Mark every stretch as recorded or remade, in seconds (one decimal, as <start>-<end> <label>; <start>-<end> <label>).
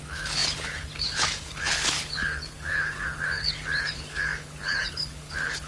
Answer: 0.0-5.7 remade